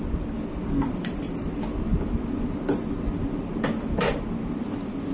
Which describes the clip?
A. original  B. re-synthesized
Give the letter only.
A